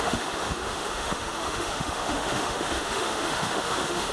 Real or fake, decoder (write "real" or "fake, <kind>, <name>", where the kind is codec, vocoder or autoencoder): fake, autoencoder, DAC-VAE